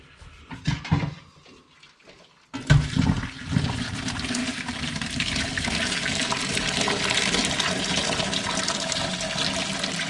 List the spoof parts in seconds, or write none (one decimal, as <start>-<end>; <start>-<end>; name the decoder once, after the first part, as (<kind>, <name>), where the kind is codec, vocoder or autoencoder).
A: 4.4-6.7 (vocoder, BigVGAN v2); 7.4-8.0

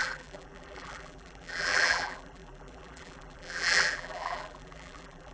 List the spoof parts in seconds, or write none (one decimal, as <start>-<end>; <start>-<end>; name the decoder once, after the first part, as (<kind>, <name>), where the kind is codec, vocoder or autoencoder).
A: 0.0-5.3 (vocoder, BigVGAN v2)

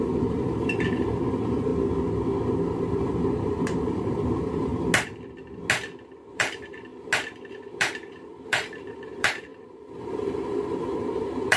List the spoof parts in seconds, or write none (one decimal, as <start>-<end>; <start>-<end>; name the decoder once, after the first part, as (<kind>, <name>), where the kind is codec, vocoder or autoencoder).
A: 0.0-1.7 (vocoder, BigVGAN v2); 2.8-4.7; 6.2-6.9; 7.5-11.6

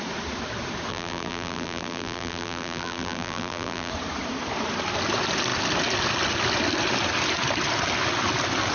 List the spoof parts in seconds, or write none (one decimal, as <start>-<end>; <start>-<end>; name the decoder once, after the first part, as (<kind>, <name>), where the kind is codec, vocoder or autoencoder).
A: 0.9-3.9 (vocoder, BigVGAN v2)